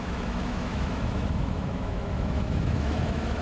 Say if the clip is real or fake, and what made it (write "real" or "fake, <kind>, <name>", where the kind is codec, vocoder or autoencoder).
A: fake, autoencoder, DAC-VAE